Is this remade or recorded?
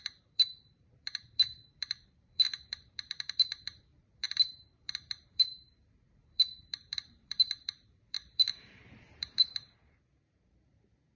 remade